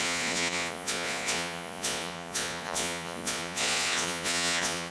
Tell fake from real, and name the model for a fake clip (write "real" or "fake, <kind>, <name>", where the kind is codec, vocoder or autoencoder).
fake, vocoder, Vocos